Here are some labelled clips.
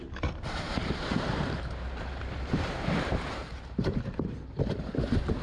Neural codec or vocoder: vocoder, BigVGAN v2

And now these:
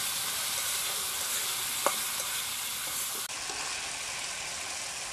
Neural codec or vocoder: none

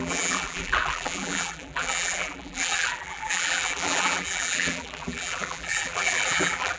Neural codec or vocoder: vocoder, BigVGAN v2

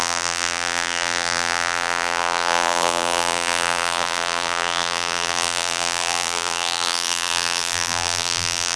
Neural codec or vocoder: vocoder, BigVGAN v2